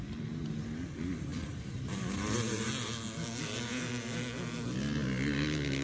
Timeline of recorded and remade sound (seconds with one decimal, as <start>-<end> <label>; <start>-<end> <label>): 0.0-5.8 recorded